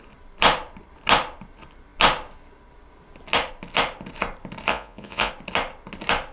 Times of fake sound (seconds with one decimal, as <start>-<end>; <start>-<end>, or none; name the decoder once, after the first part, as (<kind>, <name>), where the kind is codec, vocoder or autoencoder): 4.7-5.3 (vocoder, Vocos)